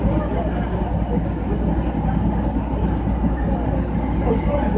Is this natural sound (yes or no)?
yes